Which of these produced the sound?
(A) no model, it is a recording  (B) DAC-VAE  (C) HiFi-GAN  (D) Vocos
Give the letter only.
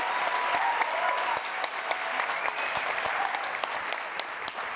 A